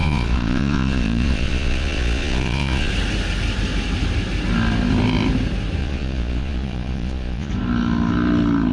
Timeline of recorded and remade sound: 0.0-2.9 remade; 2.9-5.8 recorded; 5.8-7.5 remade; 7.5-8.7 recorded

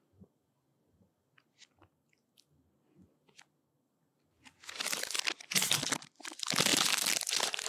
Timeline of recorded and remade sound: 0.0-7.7 recorded

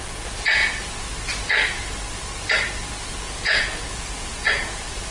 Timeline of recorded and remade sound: 0.0-0.6 remade; 0.6-3.2 recorded; 3.2-5.1 remade

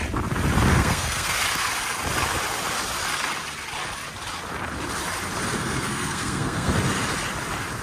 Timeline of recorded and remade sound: 0.0-0.7 recorded; 0.7-1.4 remade; 1.4-5.5 recorded; 5.5-6.7 remade; 6.7-7.8 recorded

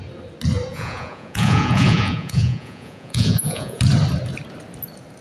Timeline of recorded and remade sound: 0.0-0.7 recorded; 0.7-3.8 remade; 3.8-5.2 recorded

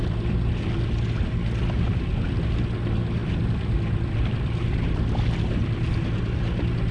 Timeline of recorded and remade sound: 0.0-3.2 recorded; 3.2-5.1 remade; 5.1-6.9 recorded